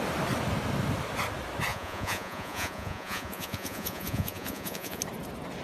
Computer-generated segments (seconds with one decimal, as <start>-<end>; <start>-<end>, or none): 1.7-5.0